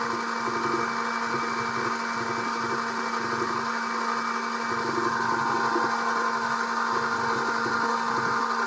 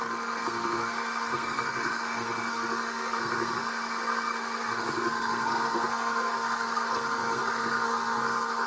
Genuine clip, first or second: first